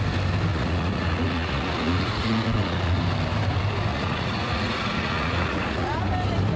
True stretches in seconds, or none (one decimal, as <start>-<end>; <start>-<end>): 0.0-0.5; 3.0-3.9; 6.0-6.6